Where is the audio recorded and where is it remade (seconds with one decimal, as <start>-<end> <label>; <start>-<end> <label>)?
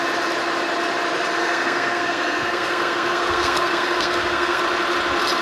0.0-1.4 recorded; 1.4-4.6 remade; 4.6-5.4 recorded